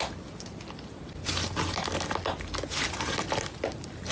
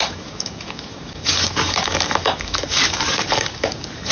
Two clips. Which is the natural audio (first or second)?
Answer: first